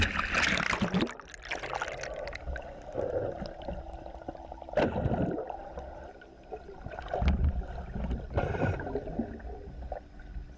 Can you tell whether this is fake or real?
real